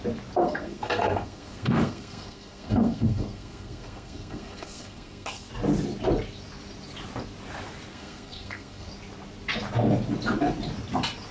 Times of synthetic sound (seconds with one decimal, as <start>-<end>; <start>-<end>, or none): 0.4-5.5; 7.9-8.9